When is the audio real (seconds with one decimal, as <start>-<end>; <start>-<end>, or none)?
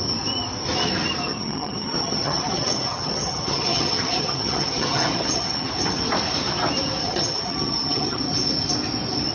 0.0-1.3; 5.7-7.0; 8.2-9.3